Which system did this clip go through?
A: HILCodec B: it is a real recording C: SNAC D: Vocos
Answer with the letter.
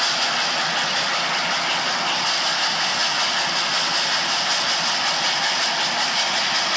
B